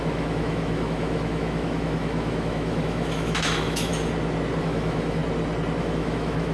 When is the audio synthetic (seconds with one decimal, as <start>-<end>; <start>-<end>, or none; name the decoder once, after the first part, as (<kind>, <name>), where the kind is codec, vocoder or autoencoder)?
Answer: 0.0-3.9 (autoencoder, DAC-VAE); 4.6-5.2; 5.8-6.5